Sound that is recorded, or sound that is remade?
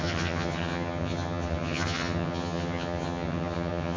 remade